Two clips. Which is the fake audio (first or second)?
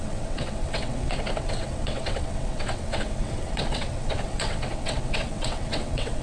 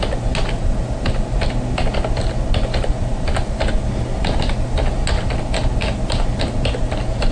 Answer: first